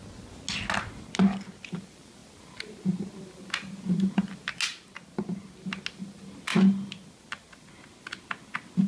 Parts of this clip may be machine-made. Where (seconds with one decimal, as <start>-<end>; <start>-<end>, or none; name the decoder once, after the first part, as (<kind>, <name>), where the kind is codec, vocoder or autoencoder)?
none